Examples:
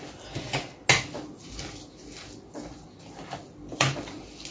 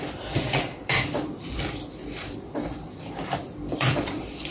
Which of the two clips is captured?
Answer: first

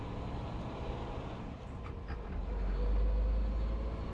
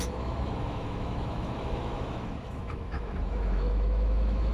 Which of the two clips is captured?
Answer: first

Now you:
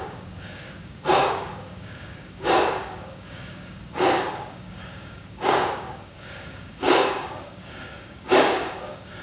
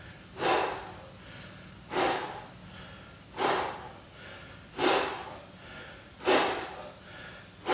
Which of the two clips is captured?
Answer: second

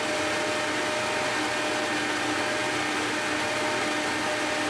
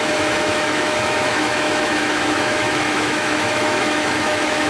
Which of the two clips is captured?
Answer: first